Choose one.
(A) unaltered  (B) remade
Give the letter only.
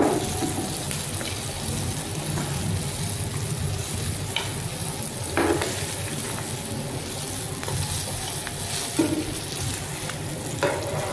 A